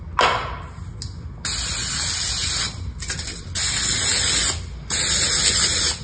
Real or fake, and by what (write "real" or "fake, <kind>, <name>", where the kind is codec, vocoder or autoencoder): real